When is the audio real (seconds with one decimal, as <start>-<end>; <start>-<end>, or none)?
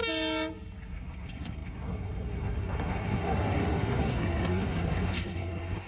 0.0-0.9